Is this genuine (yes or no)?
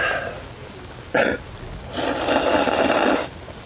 yes